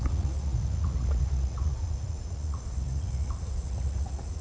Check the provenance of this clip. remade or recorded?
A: remade